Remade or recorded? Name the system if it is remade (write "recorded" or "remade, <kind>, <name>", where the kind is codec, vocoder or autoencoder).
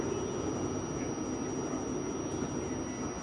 recorded